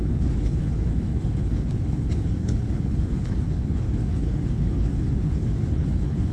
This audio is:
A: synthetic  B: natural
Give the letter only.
A